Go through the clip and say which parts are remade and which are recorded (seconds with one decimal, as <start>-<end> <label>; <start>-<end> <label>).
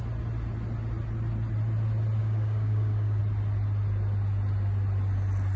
0.0-2.2 recorded; 2.2-3.2 remade; 3.2-5.6 recorded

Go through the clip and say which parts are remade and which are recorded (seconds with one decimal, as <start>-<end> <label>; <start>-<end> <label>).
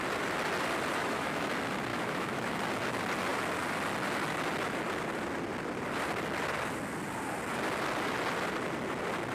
0.0-1.0 recorded; 1.0-1.5 remade; 1.5-1.9 recorded; 1.9-2.6 remade; 2.6-9.3 recorded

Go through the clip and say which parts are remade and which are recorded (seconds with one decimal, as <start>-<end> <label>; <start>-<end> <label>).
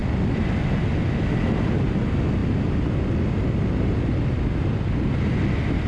0.0-5.9 recorded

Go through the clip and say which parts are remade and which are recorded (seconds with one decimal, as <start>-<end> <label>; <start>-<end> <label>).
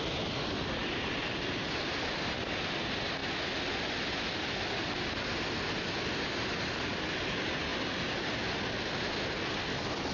0.0-10.1 recorded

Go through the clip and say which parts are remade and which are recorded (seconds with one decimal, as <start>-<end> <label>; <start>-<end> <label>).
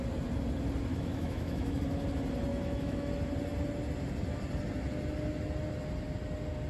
0.0-0.9 recorded; 0.9-1.8 remade; 1.8-2.5 recorded; 2.5-3.1 remade; 3.1-6.7 recorded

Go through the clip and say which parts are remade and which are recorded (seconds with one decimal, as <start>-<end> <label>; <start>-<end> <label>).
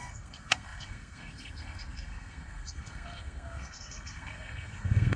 0.0-5.2 remade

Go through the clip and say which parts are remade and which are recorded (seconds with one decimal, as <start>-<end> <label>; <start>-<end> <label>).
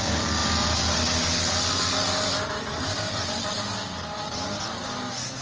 0.0-5.4 recorded